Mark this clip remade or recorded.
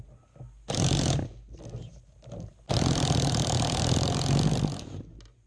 recorded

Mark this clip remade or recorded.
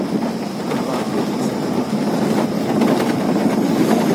recorded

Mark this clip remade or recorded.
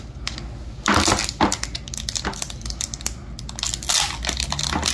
recorded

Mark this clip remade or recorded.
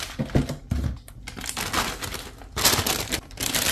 recorded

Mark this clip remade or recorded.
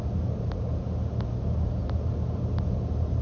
recorded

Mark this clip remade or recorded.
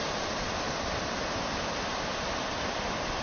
recorded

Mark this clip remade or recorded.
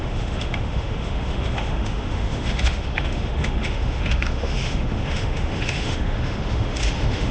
remade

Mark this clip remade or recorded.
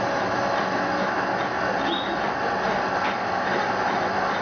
recorded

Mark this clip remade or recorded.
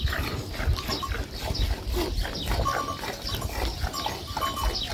recorded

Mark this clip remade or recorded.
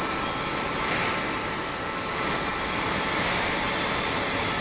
recorded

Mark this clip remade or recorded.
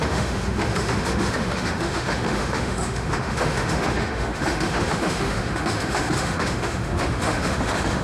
remade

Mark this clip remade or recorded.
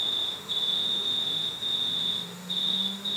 remade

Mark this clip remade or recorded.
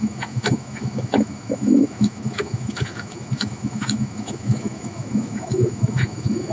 remade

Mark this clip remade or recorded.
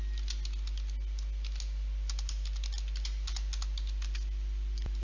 recorded